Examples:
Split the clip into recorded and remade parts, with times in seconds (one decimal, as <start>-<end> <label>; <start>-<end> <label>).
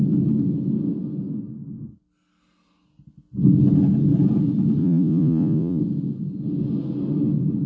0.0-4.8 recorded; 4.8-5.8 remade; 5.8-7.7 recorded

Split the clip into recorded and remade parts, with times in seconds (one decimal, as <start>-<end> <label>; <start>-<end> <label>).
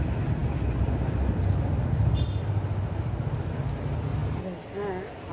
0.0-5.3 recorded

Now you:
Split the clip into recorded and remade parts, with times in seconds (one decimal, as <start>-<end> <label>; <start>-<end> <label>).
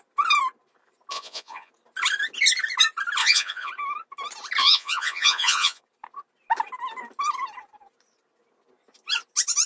0.0-1.1 recorded; 1.1-1.7 remade; 1.7-3.2 recorded; 3.2-3.7 remade; 3.7-4.6 recorded; 4.6-5.8 remade; 5.8-9.7 recorded